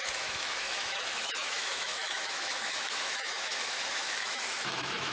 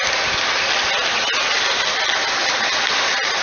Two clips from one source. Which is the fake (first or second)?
first